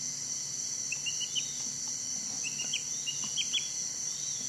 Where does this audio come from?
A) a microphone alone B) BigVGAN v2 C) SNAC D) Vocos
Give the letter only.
A